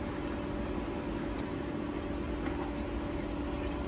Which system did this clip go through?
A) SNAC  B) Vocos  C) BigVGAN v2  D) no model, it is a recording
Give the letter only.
D